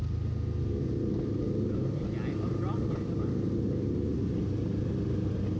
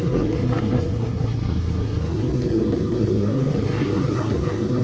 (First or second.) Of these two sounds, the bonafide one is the first